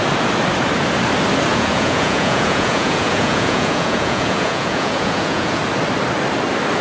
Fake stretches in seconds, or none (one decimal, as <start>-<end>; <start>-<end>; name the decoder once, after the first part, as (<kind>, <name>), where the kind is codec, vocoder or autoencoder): 1.5-5.6 (vocoder, Vocos)